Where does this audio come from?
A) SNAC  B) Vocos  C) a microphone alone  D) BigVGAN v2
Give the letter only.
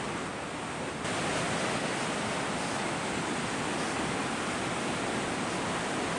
C